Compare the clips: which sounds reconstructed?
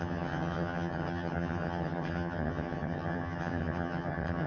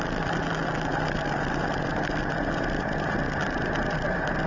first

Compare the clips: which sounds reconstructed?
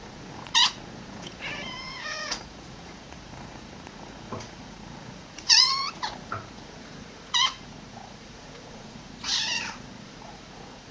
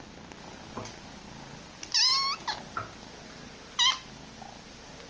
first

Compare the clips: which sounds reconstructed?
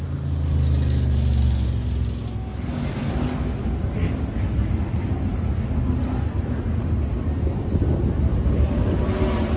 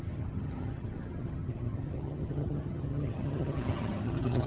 second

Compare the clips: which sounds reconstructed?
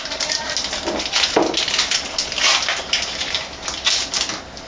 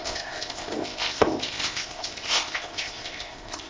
second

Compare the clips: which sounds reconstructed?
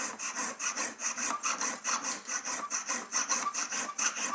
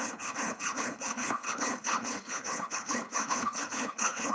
second